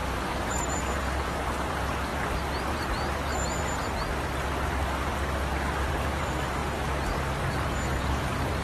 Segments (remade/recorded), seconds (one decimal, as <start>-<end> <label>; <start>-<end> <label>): 0.0-2.1 remade; 2.1-2.6 recorded; 2.6-3.6 remade; 3.6-5.9 recorded; 5.9-6.6 remade; 6.6-8.0 recorded; 8.0-8.6 remade